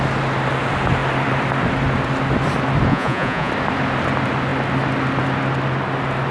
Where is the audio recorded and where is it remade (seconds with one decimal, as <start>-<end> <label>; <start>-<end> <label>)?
0.0-2.9 recorded; 2.9-3.5 remade; 3.5-6.3 recorded